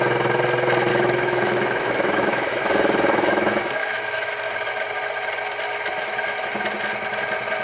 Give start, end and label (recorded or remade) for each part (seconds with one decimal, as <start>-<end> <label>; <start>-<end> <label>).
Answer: 0.0-0.9 recorded; 0.9-4.3 remade; 4.3-7.6 recorded